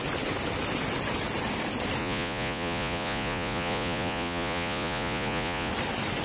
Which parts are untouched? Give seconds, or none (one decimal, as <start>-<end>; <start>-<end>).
0.0-2.0; 5.7-6.2